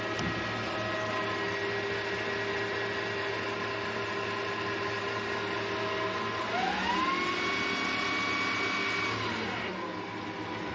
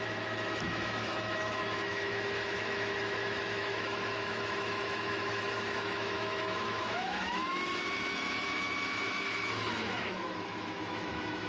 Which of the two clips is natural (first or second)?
first